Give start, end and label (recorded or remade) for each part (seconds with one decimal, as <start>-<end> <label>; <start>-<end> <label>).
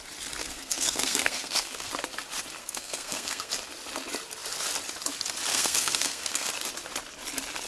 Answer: 0.0-0.4 recorded; 0.4-1.9 remade; 1.9-2.6 recorded; 2.6-3.5 remade; 3.5-5.5 recorded; 5.5-6.5 remade; 6.5-7.7 recorded